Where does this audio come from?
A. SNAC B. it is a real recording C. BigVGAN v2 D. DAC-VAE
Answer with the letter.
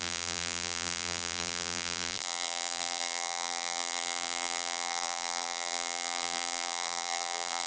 C